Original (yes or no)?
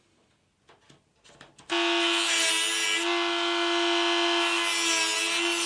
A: yes